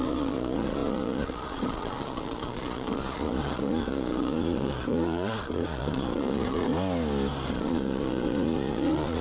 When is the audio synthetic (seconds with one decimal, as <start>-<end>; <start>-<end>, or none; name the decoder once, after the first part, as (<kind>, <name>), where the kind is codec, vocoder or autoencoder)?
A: 0.0-6.7 (vocoder, Vocos); 7.5-9.2